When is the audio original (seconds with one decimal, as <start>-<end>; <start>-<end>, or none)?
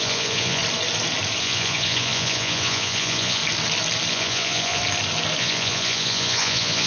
0.6-1.4; 3.4-4.1; 4.8-5.4